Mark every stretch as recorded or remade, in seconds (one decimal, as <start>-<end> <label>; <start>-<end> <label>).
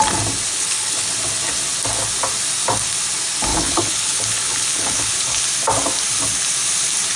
0.0-0.5 recorded; 0.5-1.1 remade; 1.1-3.5 recorded; 3.5-5.4 remade; 5.4-7.2 recorded